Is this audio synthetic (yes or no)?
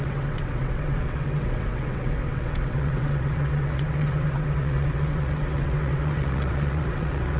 yes